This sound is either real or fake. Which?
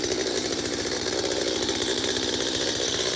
fake